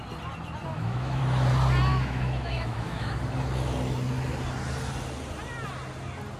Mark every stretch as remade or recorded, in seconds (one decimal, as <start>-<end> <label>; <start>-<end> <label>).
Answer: 0.0-0.6 recorded; 0.6-1.2 remade; 1.2-1.9 recorded; 1.9-3.2 remade; 3.2-6.4 recorded